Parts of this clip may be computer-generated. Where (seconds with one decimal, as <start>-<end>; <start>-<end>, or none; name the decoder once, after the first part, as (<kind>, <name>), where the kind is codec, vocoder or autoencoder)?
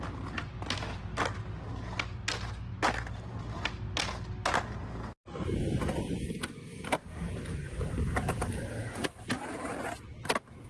6.7-7.9 (vocoder, BigVGAN v2); 8.8-9.8